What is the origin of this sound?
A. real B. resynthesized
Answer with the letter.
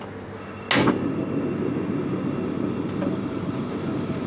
A